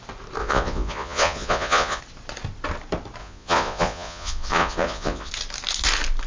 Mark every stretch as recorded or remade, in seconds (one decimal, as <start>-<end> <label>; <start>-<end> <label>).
0.0-0.4 recorded; 0.4-2.0 remade; 2.0-3.2 recorded; 3.2-5.3 remade; 5.3-6.3 recorded